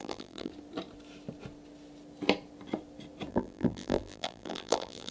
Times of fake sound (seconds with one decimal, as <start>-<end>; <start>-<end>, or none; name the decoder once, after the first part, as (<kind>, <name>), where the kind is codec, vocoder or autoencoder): 0.0-0.5 (vocoder, BigVGAN v2); 3.3-5.1